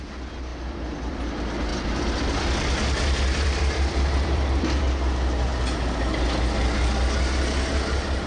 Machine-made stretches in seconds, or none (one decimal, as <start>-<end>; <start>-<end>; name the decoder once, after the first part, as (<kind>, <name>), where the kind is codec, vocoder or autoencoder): 0.5-1.1 (vocoder, BigVGAN v2); 1.7-4.8